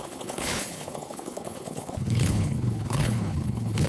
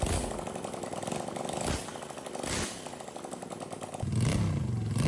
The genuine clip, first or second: second